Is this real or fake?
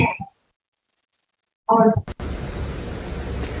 real